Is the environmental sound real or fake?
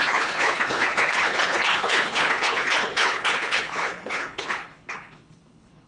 fake